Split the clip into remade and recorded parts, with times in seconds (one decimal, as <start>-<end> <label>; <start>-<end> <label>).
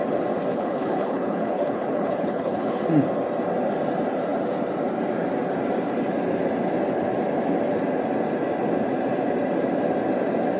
0.0-0.5 recorded; 0.5-2.8 remade; 2.8-10.6 recorded